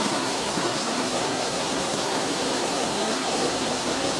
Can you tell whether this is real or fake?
fake